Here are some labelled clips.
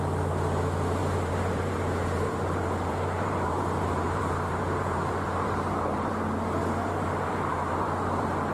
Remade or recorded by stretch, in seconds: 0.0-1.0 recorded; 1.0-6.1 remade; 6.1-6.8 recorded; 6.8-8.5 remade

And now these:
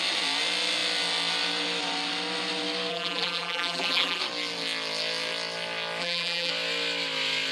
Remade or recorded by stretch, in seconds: 0.0-2.9 recorded; 2.9-4.2 remade; 4.2-6.0 recorded; 6.0-6.5 remade; 6.5-7.5 recorded

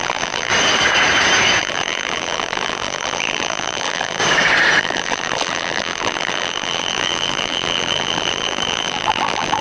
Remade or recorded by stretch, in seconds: 0.0-0.5 remade; 0.5-1.6 recorded; 1.6-4.2 remade; 4.2-4.8 recorded; 4.8-9.6 remade